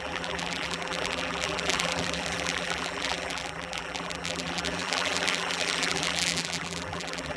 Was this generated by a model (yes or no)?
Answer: yes